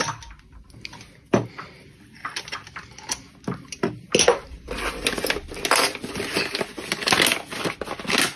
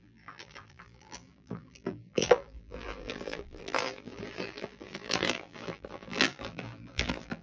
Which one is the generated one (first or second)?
second